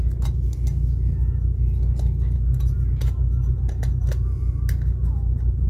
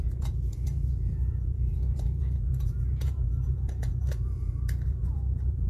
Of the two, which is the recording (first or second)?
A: first